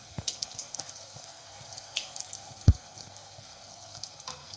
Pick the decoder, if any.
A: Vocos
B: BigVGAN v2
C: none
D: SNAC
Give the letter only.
D